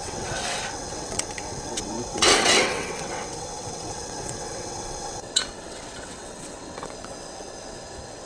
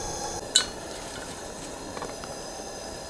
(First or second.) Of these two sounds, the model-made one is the first